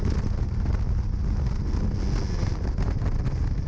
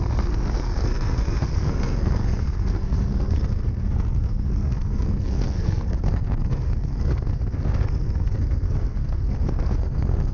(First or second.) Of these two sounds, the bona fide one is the first